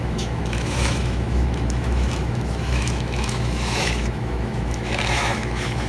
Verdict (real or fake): fake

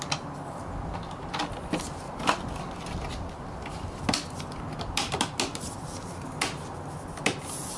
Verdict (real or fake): real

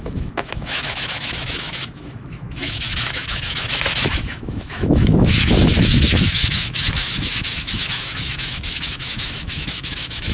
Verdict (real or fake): fake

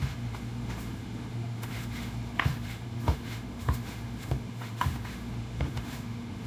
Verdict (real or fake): fake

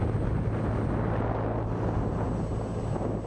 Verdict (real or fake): real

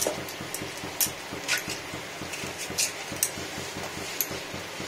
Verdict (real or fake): real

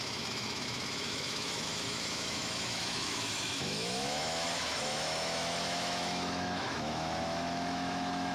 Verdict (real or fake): fake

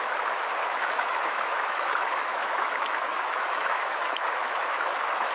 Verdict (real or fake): fake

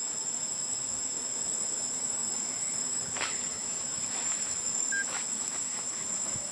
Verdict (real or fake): fake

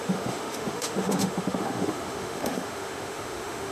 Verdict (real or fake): fake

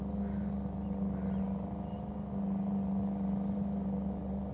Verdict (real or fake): real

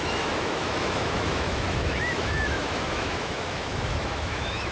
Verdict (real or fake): fake